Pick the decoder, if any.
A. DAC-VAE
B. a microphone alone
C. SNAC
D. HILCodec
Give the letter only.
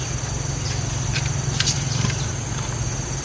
B